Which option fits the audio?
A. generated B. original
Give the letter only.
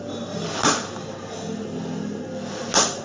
B